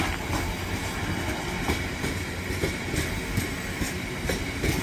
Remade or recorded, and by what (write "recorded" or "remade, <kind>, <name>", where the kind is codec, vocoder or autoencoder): recorded